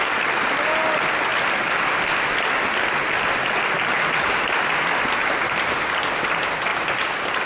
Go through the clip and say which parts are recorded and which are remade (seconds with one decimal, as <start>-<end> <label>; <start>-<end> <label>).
0.0-1.3 recorded; 1.3-4.1 remade; 4.1-6.7 recorded; 6.7-7.5 remade